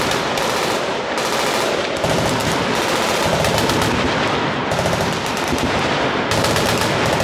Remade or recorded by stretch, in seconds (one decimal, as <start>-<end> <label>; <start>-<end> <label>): 0.0-7.2 recorded